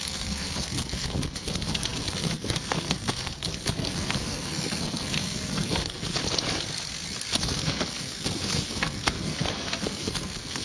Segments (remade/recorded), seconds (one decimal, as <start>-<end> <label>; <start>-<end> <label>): 0.0-6.2 remade; 6.2-7.4 recorded; 7.4-10.6 remade